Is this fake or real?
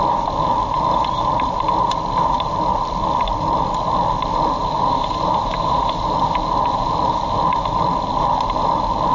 real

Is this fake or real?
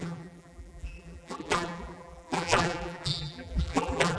fake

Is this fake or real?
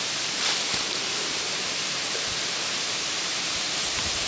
fake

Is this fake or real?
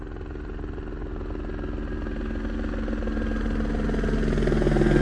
real